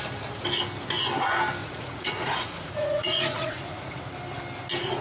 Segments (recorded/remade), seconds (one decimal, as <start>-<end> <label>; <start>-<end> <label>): 0.0-1.6 recorded; 1.6-4.0 remade; 4.0-5.0 recorded